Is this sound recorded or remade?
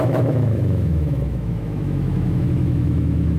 remade